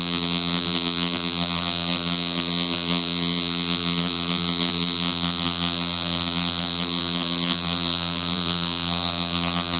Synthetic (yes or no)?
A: yes